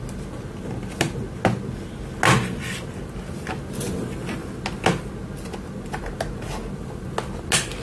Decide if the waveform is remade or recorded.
recorded